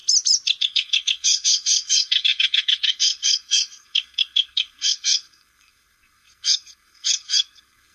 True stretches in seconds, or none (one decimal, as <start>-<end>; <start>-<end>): 0.0-0.6